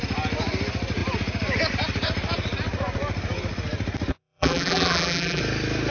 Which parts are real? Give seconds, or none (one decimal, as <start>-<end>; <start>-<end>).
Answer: 0.0-4.1; 5.4-5.9